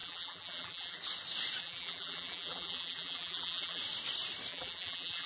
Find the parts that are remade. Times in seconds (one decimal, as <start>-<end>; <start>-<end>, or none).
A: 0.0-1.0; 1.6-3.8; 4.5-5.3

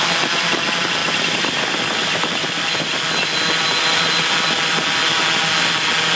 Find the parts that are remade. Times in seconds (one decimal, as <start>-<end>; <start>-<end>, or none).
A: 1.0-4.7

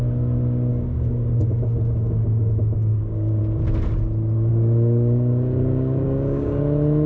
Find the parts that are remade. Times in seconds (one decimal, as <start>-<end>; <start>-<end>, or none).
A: 0.7-3.4; 4.5-6.6